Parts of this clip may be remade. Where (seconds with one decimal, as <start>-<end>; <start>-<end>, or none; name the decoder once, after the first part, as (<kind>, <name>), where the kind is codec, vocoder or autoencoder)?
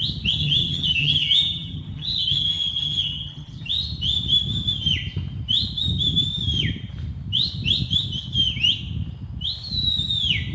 0.4-3.7 (vocoder, HiFi-GAN)